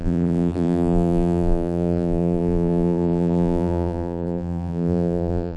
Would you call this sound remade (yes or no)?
yes